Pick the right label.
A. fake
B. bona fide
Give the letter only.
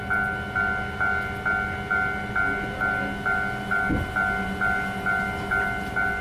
B